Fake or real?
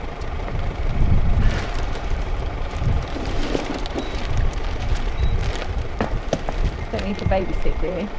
fake